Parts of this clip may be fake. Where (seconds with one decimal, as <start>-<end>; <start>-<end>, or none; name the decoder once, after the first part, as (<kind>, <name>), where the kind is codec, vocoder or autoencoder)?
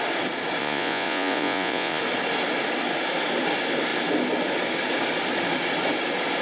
0.6-2.0 (vocoder, Vocos)